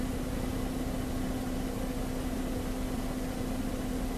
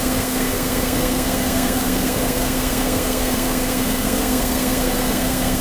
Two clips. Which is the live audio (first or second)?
first